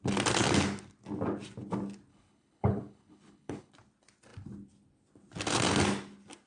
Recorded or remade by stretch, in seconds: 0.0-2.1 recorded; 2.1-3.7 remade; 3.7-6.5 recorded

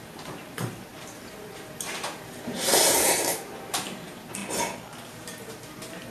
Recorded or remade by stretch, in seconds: 0.0-4.4 remade; 4.4-5.1 recorded; 5.1-6.1 remade

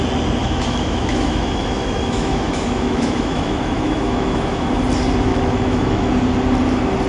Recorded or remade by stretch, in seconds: 0.0-0.4 recorded; 0.4-4.7 remade; 4.7-5.3 recorded; 5.3-6.1 remade; 6.1-7.1 recorded

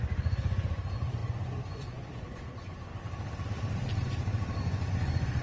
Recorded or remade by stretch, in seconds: 0.0-2.9 remade; 2.9-4.6 recorded; 4.6-5.4 remade

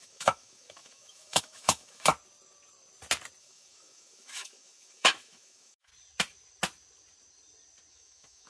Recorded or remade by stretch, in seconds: 0.0-2.1 remade; 2.1-3.4 recorded; 3.4-5.9 remade; 5.9-7.9 recorded; 7.9-8.5 remade